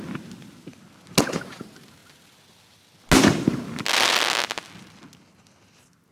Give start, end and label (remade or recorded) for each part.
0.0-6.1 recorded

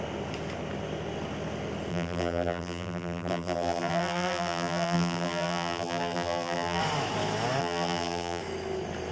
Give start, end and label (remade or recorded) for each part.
0.0-1.9 recorded; 1.9-6.8 remade; 6.8-7.6 recorded; 7.6-8.4 remade; 8.4-9.1 recorded

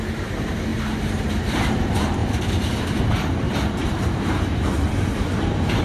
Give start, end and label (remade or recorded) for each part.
0.0-5.8 remade

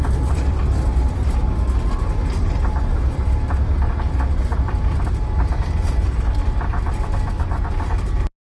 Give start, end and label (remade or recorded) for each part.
0.0-0.9 recorded; 0.9-1.4 remade; 1.4-4.5 recorded; 4.5-5.0 remade; 5.0-8.5 recorded